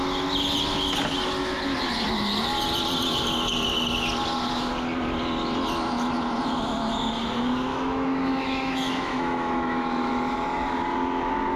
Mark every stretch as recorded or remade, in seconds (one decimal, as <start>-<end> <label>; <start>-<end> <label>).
0.0-7.7 recorded; 7.7-10.1 remade; 10.1-11.6 recorded